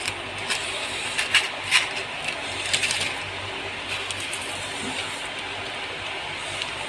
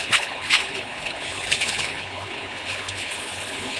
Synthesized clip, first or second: second